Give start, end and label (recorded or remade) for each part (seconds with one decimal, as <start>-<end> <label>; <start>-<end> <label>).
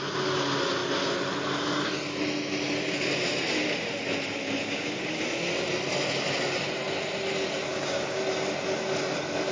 0.0-4.6 recorded; 4.6-5.2 remade; 5.2-7.7 recorded; 7.7-8.2 remade; 8.2-9.5 recorded